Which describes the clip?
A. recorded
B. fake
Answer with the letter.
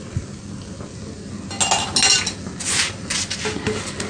A